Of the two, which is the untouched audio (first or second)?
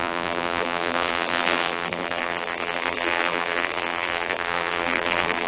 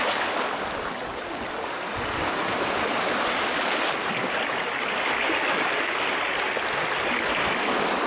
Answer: second